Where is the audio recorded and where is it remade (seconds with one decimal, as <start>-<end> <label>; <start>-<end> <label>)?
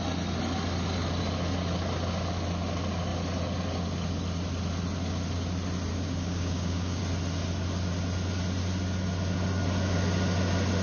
0.0-5.9 recorded; 5.9-7.0 remade; 7.0-10.8 recorded